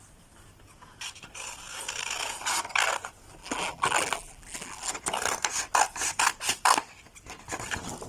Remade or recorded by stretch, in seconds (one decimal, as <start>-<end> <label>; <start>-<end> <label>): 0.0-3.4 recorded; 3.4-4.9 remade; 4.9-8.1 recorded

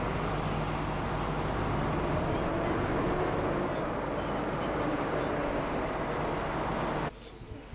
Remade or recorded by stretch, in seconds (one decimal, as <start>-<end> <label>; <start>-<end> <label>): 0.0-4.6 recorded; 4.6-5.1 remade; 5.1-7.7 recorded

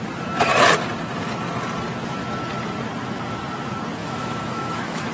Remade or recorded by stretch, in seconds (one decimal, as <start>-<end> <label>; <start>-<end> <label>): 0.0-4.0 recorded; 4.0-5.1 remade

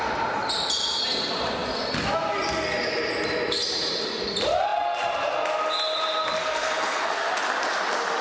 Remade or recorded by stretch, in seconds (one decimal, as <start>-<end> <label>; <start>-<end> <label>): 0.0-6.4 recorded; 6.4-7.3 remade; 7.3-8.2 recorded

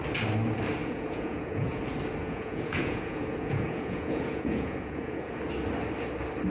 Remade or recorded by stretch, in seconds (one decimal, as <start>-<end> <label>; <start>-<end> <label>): 0.0-0.8 recorded; 0.8-1.8 remade; 1.8-2.2 recorded; 2.2-5.4 remade; 5.4-6.5 recorded

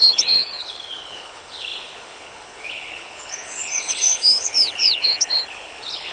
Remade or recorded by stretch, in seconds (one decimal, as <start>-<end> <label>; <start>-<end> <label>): 0.0-6.1 remade

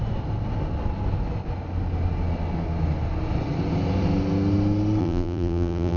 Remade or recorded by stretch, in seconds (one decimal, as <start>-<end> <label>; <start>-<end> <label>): 0.0-5.0 recorded; 5.0-6.0 remade

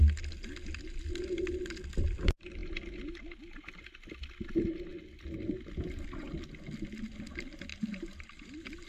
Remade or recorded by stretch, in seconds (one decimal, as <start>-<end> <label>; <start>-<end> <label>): 0.0-7.7 recorded; 7.7-8.9 remade